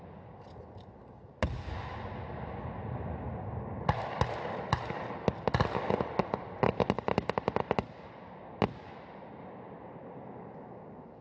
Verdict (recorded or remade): recorded